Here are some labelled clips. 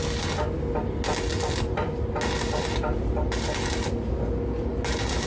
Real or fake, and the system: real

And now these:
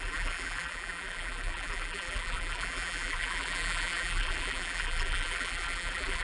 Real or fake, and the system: fake, vocoder, BigVGAN v2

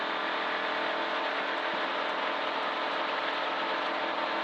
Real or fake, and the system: real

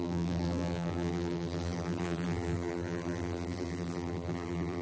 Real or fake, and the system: fake, vocoder, BigVGAN v2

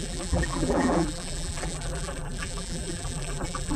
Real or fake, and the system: fake, vocoder, BigVGAN v2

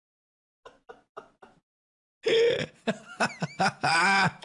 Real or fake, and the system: real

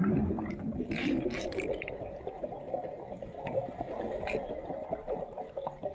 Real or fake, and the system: fake, vocoder, BigVGAN v2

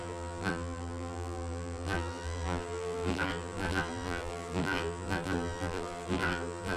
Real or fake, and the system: fake, vocoder, BigVGAN v2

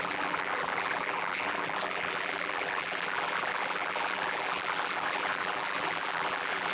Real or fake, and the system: fake, vocoder, BigVGAN v2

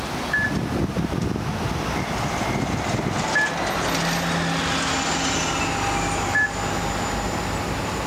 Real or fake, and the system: real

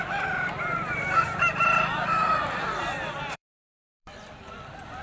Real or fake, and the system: fake, vocoder, BigVGAN v2